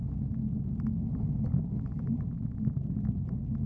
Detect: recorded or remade recorded